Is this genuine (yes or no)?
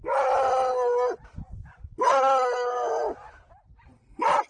yes